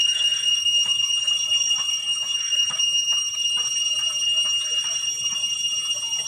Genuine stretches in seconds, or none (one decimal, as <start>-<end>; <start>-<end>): 1.3-2.1; 3.5-6.3